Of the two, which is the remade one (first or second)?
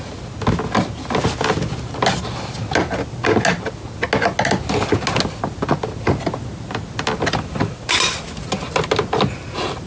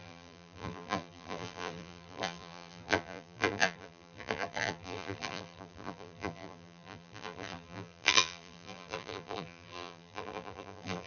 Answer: second